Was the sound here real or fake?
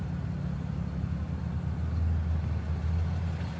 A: real